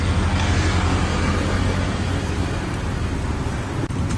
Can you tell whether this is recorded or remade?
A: recorded